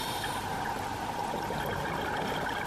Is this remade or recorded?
recorded